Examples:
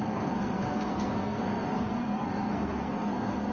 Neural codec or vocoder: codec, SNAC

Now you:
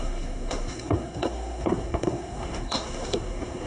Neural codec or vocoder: codec, SNAC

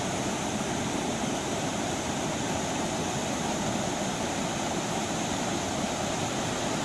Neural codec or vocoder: none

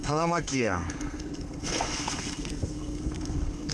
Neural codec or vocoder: codec, SNAC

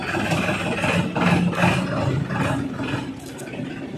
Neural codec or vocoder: none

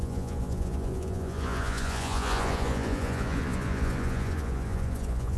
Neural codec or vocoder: vocoder, Vocos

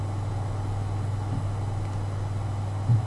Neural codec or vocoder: none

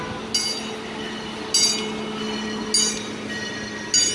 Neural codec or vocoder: none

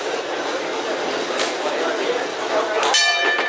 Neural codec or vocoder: none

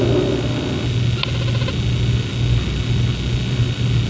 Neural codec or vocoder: none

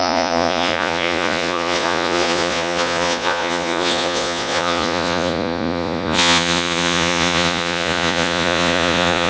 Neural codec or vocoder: vocoder, Vocos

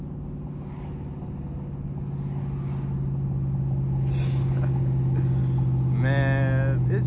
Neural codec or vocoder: none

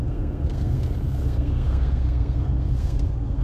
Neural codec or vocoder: codec, SNAC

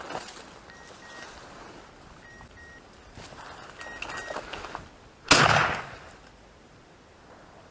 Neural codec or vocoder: none